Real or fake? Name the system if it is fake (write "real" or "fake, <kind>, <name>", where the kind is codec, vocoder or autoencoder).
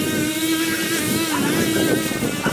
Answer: real